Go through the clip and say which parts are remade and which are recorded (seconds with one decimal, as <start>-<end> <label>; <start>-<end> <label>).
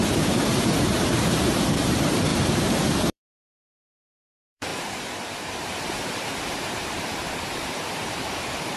0.0-8.8 remade